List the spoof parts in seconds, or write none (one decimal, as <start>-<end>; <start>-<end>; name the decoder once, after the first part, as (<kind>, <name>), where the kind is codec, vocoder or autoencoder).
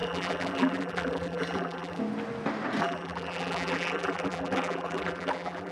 0.0-2.0 (vocoder, BigVGAN v2); 2.8-5.7